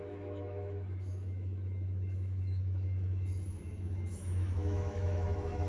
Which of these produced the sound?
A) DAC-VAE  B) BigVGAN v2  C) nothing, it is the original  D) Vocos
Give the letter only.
A